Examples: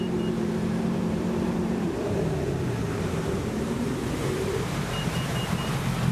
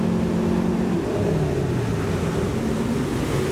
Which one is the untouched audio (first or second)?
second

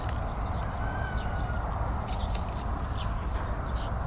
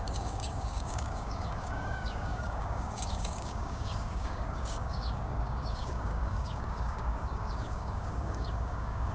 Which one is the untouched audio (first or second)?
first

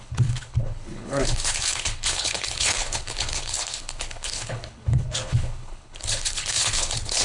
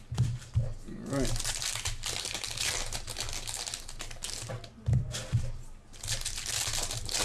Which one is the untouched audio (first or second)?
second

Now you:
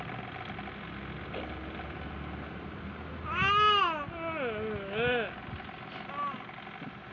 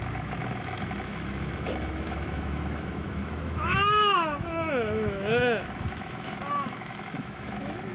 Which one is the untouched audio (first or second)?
first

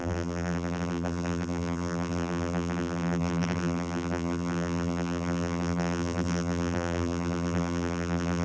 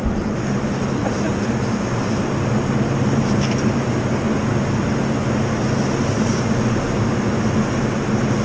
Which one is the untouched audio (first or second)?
second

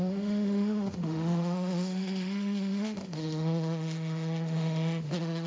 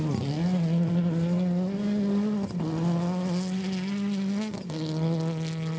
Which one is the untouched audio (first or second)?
second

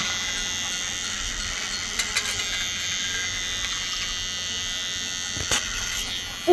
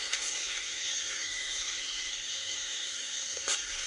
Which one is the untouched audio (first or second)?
first